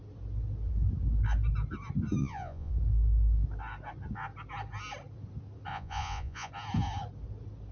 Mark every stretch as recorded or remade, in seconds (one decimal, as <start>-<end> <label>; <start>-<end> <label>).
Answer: 0.0-2.2 recorded; 2.2-2.7 remade; 2.7-5.7 recorded; 5.7-6.5 remade; 6.5-7.7 recorded